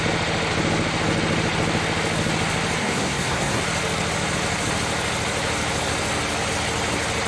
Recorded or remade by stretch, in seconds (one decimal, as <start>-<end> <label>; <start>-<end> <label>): 0.0-2.8 recorded; 2.8-3.6 remade; 3.6-7.3 recorded